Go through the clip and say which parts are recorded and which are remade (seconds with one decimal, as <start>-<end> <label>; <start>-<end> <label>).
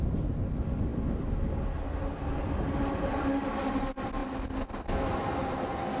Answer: 0.0-6.0 recorded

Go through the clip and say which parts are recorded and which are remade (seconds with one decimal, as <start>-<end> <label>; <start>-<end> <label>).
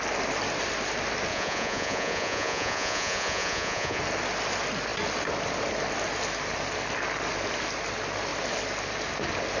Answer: 0.0-1.3 recorded; 1.3-4.0 remade; 4.0-9.6 recorded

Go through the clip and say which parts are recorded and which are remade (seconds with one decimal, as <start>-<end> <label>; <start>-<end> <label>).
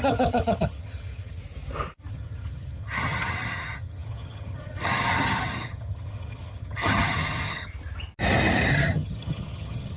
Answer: 0.0-1.4 remade; 1.4-2.1 recorded; 2.1-7.7 remade; 7.7-8.7 recorded; 8.7-10.0 remade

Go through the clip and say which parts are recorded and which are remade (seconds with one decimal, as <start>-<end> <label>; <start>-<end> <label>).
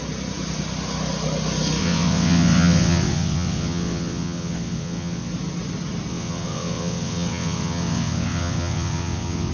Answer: 0.0-1.8 recorded; 1.8-5.3 remade; 5.3-6.1 recorded; 6.1-9.5 remade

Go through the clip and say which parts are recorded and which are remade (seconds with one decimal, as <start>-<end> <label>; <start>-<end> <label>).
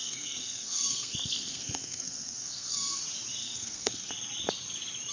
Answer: 0.0-3.0 remade; 3.0-3.4 recorded; 3.4-4.1 remade; 4.1-5.1 recorded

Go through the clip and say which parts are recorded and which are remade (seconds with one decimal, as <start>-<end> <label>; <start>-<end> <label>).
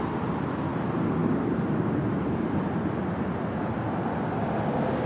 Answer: 0.0-5.1 recorded